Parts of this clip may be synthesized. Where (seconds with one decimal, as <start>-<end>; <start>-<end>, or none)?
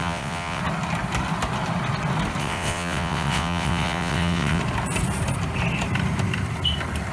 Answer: 0.0-0.6; 2.4-4.6